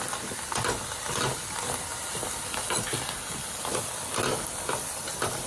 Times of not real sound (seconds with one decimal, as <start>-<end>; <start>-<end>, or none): none